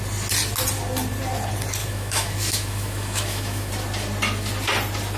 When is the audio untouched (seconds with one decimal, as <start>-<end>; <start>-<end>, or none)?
0.0-1.8; 3.7-5.2